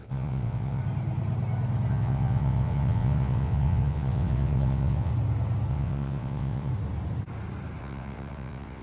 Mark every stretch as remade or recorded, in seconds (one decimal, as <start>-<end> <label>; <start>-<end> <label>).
0.0-0.8 remade; 0.8-1.9 recorded; 1.9-5.1 remade; 5.1-5.7 recorded; 5.7-6.7 remade; 6.7-7.8 recorded; 7.8-8.8 remade